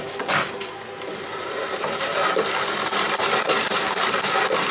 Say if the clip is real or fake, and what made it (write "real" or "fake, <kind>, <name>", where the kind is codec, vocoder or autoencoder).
real